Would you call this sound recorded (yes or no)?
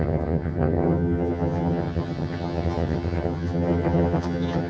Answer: no